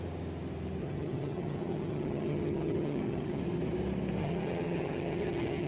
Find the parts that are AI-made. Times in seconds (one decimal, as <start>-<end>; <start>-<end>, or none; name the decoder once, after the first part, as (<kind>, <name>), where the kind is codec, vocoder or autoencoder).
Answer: 0.8-3.4 (vocoder, HiFi-GAN); 4.2-5.7